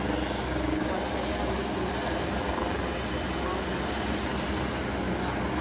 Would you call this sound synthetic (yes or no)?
no